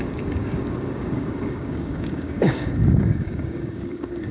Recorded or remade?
remade